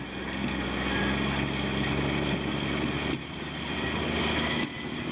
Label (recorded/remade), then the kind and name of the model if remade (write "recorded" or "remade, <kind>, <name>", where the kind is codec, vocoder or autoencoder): recorded